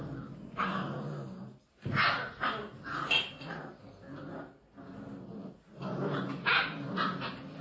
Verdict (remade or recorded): recorded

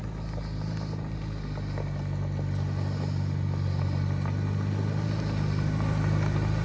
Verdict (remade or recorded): recorded